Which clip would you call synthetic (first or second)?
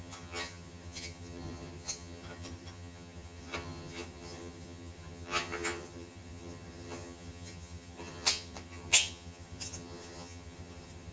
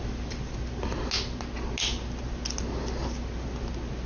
first